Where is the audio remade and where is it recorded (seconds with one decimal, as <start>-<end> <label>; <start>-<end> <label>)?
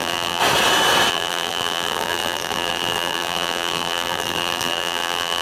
0.0-0.4 remade; 0.4-1.1 recorded; 1.1-5.4 remade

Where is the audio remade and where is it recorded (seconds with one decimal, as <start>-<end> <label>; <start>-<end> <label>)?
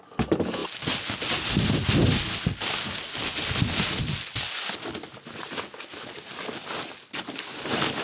0.0-8.0 recorded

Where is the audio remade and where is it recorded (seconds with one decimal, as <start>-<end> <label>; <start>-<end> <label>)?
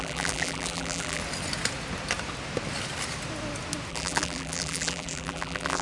0.0-1.2 remade; 1.2-3.9 recorded; 3.9-5.8 remade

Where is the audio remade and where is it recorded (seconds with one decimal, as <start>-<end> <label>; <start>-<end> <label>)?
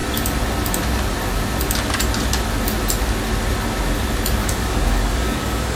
0.0-4.4 recorded; 4.4-5.8 remade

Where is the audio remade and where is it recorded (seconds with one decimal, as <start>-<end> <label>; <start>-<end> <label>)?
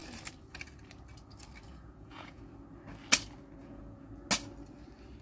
0.0-1.7 recorded; 1.7-2.4 remade; 2.4-3.6 recorded; 3.6-4.1 remade; 4.1-5.2 recorded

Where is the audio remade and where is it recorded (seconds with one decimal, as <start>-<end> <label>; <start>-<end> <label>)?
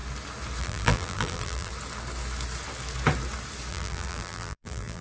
0.0-0.6 recorded; 0.6-1.7 remade; 1.7-3.7 recorded; 3.7-5.0 remade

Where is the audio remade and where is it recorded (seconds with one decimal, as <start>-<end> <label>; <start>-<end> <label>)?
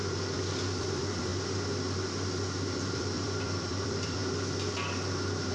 0.0-0.8 recorded; 0.8-1.3 remade; 1.3-2.9 recorded; 2.9-4.2 remade; 4.2-5.5 recorded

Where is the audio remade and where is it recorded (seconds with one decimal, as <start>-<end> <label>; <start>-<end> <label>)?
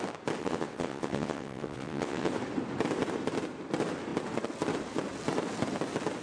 0.0-0.4 recorded; 0.4-2.3 remade; 2.3-6.2 recorded